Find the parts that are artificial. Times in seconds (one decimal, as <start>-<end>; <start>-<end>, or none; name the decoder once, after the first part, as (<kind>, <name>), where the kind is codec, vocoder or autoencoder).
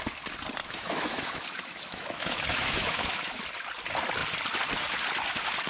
0.6-3.4 (autoencoder, DAC-VAE)